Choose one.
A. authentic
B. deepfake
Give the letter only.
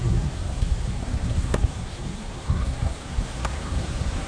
B